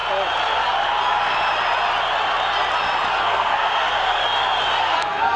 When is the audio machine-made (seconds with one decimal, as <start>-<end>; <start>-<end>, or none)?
3.2-4.2; 4.8-5.4